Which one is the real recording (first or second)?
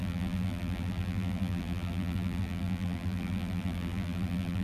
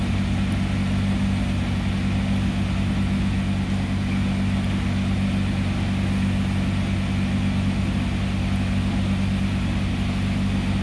second